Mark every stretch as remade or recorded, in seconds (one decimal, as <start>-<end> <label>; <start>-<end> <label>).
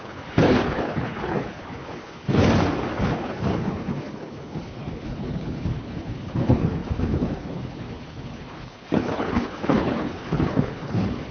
0.0-2.4 remade; 2.4-3.0 recorded; 3.0-11.3 remade